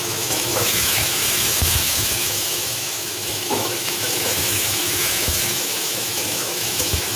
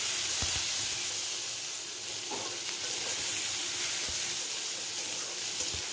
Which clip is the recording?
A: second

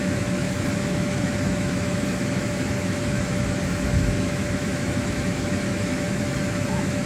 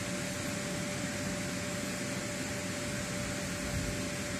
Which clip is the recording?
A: second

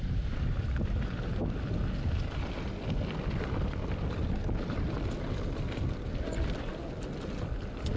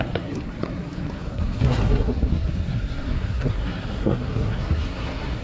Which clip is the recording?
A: first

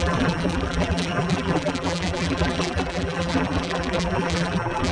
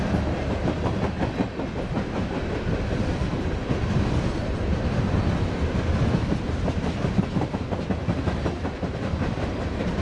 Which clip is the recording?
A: second